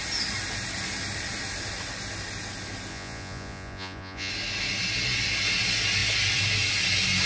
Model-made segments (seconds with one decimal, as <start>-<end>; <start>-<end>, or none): 2.9-4.3